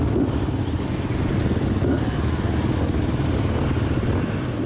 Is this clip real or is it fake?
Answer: real